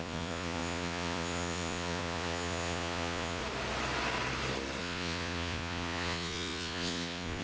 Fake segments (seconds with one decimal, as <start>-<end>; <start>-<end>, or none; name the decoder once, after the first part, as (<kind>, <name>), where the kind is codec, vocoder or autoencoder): 0.0-3.4 (vocoder, Vocos); 4.8-7.4